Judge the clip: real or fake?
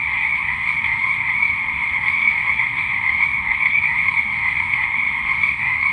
fake